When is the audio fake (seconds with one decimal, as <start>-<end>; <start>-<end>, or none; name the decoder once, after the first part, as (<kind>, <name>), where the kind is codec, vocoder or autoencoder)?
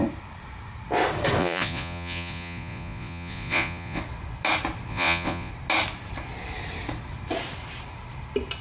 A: 1.4-4.0 (vocoder, Vocos); 4.9-5.5